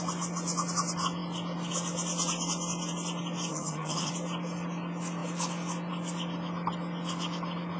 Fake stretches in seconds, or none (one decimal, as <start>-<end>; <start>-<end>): 3.5-4.1